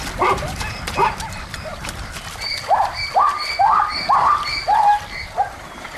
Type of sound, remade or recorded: remade